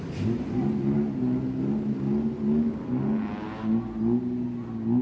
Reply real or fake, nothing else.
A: real